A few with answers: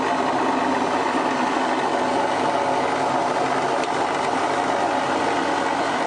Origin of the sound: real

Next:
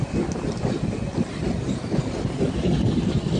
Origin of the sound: real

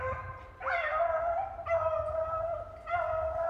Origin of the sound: real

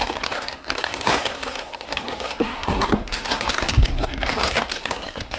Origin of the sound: fake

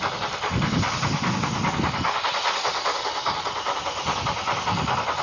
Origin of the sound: real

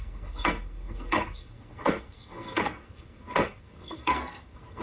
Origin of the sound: fake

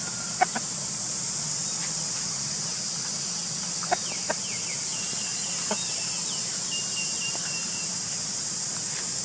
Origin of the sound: real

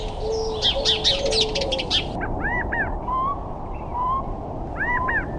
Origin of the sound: real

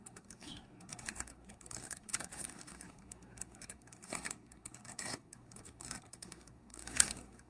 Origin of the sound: fake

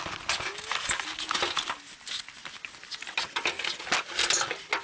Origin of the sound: real